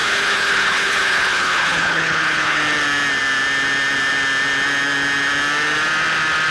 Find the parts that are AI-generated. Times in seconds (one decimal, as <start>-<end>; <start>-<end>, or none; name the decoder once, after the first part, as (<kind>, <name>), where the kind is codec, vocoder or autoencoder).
0.0-2.6 (codec, HILCodec)